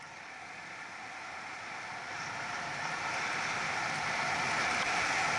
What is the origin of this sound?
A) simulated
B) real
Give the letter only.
B